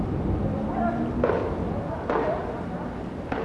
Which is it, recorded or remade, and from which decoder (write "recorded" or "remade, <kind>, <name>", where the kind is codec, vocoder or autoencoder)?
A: recorded